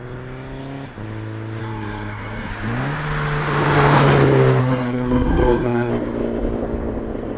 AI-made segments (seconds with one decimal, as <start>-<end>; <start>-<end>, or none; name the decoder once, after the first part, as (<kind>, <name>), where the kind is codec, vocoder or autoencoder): 1.6-2.5 (codec, SNAC); 4.6-5.9